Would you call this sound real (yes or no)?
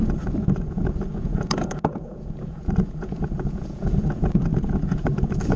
no